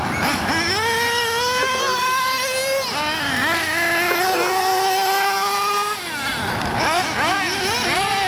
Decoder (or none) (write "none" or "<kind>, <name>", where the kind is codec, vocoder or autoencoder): none